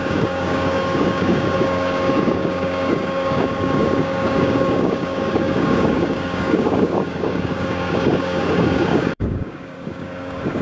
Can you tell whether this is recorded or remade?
remade